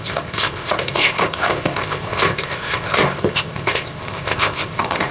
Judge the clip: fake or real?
fake